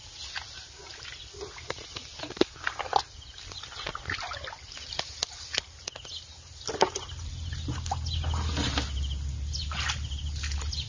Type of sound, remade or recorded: recorded